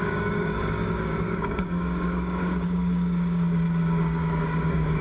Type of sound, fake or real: fake